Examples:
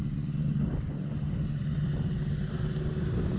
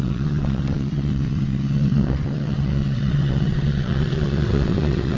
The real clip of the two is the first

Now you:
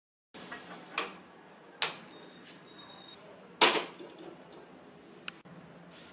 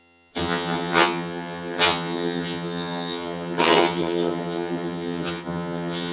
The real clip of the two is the first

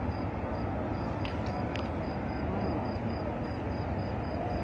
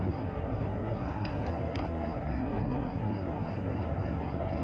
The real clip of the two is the first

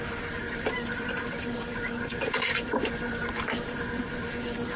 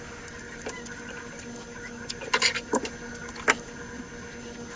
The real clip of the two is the second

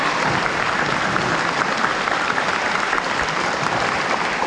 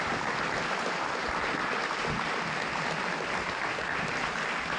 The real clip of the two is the second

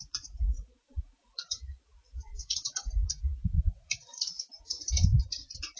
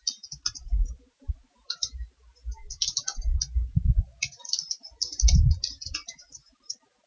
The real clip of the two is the second